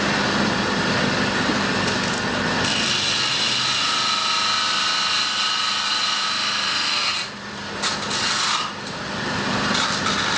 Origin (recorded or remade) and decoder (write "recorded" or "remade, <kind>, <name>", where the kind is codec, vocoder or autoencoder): recorded